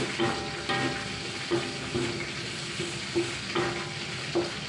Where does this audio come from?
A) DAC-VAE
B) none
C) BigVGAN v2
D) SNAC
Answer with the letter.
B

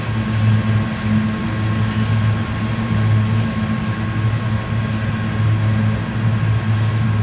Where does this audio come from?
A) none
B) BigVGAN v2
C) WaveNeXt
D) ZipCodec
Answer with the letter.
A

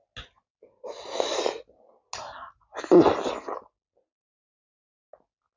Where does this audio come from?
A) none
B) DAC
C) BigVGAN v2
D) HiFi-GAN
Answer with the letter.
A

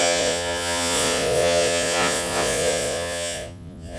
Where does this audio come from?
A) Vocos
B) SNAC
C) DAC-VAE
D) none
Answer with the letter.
A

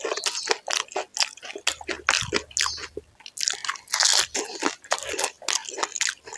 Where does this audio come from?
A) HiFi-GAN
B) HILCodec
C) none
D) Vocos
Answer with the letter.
C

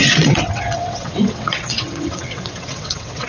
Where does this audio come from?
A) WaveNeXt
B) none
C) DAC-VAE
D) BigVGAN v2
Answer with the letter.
A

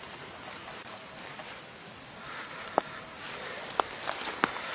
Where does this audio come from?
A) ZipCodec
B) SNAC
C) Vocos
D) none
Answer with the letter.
D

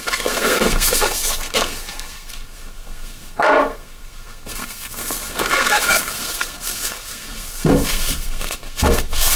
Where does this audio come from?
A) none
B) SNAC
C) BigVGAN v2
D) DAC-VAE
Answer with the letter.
B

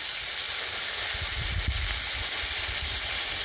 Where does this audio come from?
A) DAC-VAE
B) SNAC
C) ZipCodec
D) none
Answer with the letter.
D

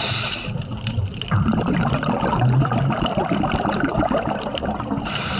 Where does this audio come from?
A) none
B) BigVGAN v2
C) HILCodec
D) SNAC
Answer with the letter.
B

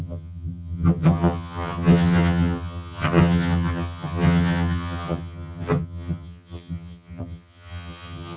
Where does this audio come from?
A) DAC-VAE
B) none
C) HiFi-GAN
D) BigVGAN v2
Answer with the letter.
C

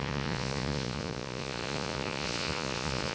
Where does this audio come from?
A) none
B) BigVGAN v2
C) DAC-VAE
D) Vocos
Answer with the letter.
D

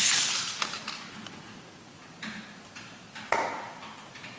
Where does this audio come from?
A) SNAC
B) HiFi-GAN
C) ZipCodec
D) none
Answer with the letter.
D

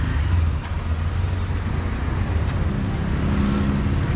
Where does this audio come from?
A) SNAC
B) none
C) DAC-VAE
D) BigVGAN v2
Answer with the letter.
B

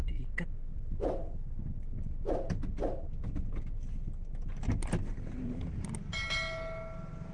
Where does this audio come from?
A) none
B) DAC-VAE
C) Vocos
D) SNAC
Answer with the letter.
A